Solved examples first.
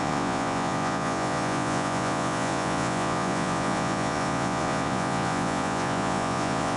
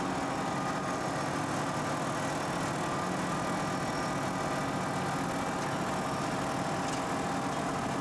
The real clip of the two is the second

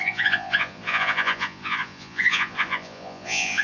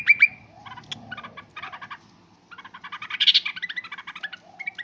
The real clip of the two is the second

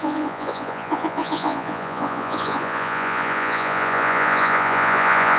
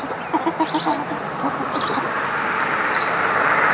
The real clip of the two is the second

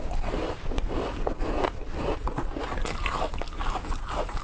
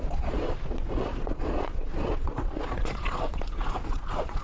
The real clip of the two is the first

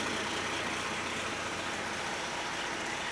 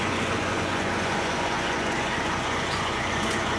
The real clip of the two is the first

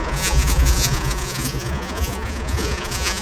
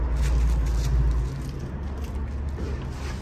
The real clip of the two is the second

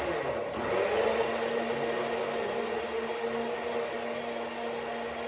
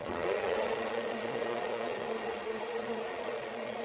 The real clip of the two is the first